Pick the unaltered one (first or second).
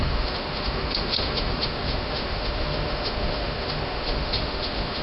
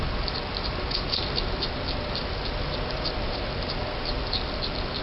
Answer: second